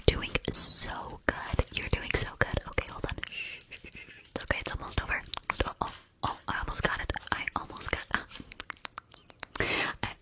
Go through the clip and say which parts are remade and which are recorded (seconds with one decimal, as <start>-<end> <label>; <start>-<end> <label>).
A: 0.0-0.6 remade; 0.6-1.3 recorded; 1.3-4.8 remade; 4.8-7.0 recorded; 7.0-10.2 remade